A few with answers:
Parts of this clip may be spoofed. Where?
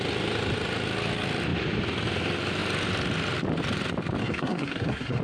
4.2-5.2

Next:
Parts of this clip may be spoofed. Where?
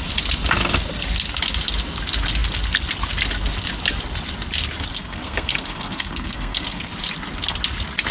4.9-6.9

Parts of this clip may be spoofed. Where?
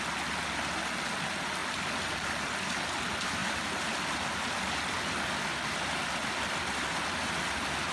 none